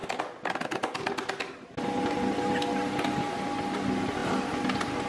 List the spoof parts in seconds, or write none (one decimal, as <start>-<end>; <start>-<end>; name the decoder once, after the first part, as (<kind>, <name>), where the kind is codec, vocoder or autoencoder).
none